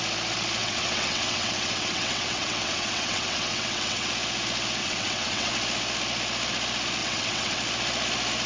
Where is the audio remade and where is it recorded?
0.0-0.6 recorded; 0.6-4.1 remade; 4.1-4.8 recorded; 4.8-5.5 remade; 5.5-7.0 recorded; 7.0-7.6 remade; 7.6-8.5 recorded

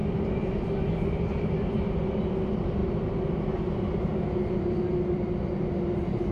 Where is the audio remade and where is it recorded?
0.0-6.3 recorded

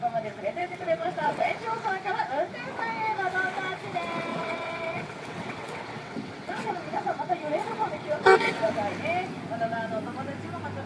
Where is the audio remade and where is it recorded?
0.0-0.6 recorded; 0.6-1.9 remade; 1.9-4.3 recorded; 4.3-8.7 remade; 8.7-10.9 recorded

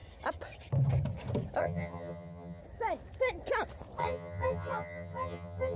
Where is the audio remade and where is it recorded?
0.0-1.6 recorded; 1.6-2.6 remade; 2.6-4.0 recorded; 4.0-5.8 remade

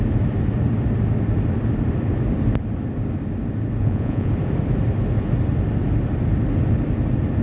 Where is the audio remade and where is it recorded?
0.0-3.8 recorded; 3.8-4.3 remade; 4.3-7.4 recorded